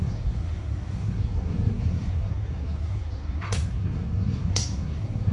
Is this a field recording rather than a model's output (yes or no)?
no